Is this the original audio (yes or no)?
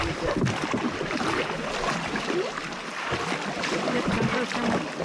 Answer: yes